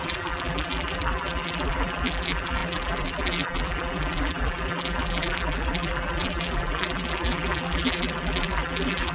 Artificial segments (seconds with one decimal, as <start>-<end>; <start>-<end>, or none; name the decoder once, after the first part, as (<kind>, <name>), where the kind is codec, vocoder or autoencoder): 0.0-9.1 (vocoder, BigVGAN v2)